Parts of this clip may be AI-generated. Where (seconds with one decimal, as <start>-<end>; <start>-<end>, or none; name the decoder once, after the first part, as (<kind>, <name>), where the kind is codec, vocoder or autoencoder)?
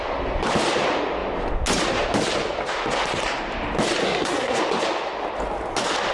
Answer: 4.0-4.6 (codec, SNAC)